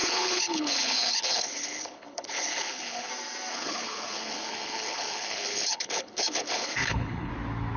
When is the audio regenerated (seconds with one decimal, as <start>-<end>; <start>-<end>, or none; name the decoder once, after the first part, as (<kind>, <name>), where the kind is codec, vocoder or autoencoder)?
0.0-3.1 (codec, HILCodec); 3.5-7.3